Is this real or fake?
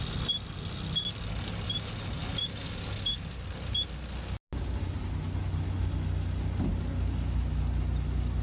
real